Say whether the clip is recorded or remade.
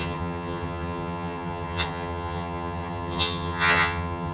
remade